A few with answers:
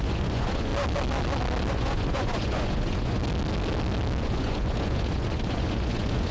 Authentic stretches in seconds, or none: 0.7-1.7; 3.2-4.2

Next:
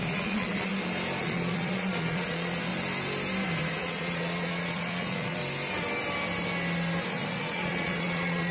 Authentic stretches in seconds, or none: 0.7-1.2; 2.7-3.8; 5.4-7.1

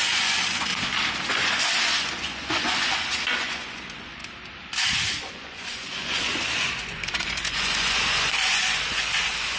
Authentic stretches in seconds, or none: 0.7-1.3; 4.2-5.3

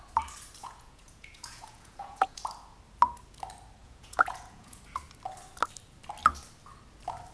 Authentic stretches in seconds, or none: 0.0-0.6; 2.4-3.8; 4.8-7.3

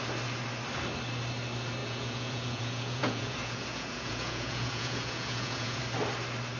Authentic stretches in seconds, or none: 0.0-1.8; 5.8-6.6

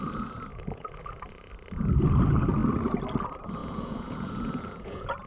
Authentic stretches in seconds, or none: 0.0-0.5; 1.5-3.6

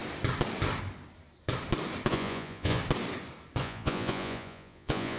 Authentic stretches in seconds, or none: 0.0-2.1; 2.8-3.6

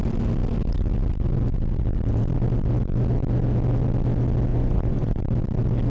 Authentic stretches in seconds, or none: 0.0-4.5; 5.2-5.9